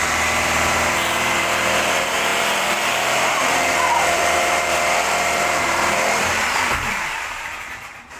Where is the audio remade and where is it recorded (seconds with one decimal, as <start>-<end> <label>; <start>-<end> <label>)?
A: 0.0-8.2 remade